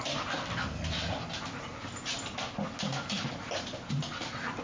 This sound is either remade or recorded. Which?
recorded